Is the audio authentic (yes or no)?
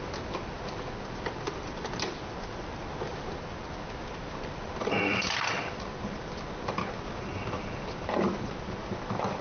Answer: yes